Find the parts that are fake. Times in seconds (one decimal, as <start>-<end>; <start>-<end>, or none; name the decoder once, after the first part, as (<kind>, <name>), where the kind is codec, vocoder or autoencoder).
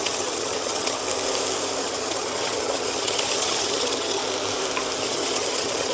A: 0.0-1.0 (vocoder, HiFi-GAN); 1.8-4.2; 5.0-5.9